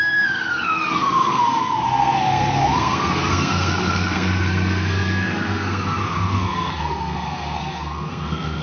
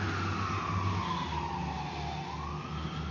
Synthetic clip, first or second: first